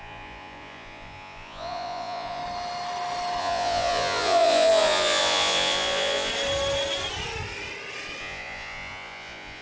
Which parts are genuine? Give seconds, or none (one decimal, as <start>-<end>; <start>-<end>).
2.4-3.4; 6.3-8.2

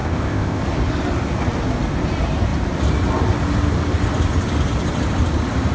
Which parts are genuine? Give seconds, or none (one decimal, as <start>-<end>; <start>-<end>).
0.6-5.7

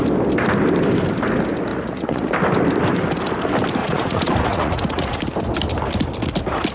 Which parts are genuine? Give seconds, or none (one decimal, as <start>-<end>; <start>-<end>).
0.0-1.7; 2.3-3.8; 5.2-6.7

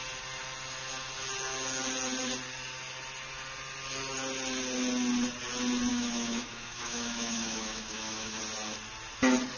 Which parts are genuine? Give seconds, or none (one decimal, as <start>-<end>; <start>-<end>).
0.0-5.9; 8.4-9.6

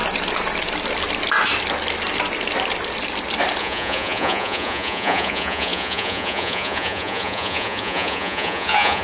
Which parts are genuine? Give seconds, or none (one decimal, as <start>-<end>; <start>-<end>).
0.0-3.6

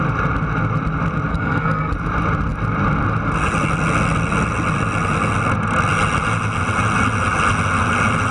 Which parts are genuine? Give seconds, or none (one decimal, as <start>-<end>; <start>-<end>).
0.0-1.3; 1.9-8.3

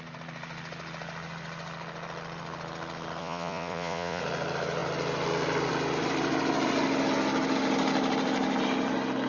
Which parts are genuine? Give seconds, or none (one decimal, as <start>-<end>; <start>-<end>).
0.0-3.2; 4.2-9.3

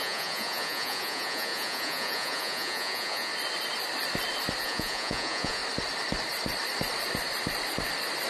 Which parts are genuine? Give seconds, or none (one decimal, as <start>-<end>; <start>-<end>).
3.3-4.6; 5.6-8.3